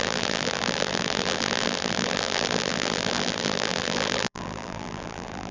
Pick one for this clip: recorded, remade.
remade